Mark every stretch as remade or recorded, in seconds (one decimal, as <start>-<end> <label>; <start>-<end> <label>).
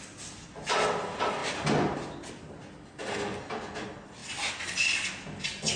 0.0-5.8 recorded